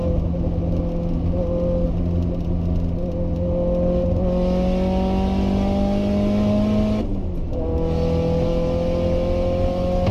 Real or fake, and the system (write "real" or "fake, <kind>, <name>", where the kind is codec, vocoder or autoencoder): real